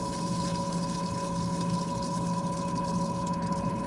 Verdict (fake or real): fake